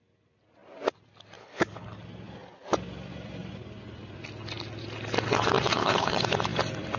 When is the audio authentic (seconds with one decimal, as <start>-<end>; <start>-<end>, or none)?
0.0-1.4; 2.0-5.7; 6.2-7.0

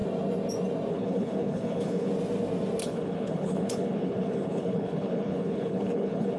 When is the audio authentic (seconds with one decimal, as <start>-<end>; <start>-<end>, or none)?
0.0-0.9; 2.1-2.8

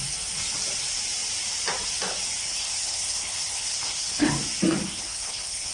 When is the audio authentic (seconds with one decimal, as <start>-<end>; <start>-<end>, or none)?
0.0-2.4; 4.3-4.8

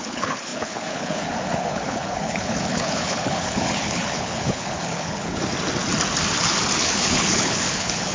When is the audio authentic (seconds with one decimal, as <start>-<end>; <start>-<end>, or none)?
5.4-6.8

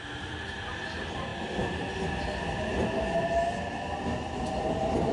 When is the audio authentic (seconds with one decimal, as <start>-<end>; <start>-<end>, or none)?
0.0-5.1

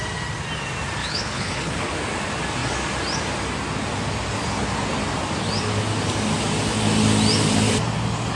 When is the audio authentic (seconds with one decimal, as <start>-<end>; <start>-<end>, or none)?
0.0-1.0; 1.9-8.4

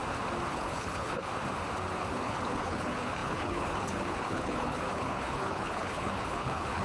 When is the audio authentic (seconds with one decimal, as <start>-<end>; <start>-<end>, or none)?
0.0-0.5; 1.3-2.1